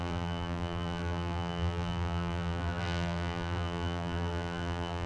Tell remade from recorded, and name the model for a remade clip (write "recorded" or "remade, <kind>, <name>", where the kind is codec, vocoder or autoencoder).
remade, vocoder, BigVGAN v2